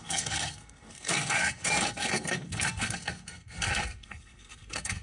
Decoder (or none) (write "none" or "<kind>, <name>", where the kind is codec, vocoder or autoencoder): codec, SNAC